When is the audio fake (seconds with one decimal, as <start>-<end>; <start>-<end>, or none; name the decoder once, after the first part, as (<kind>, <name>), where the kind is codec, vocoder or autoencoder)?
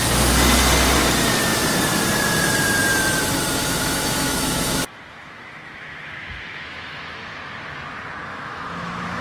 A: 3.6-7.4 (autoencoder, DAC-VAE); 8.3-9.2